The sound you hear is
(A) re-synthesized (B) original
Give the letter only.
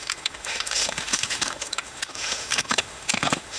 A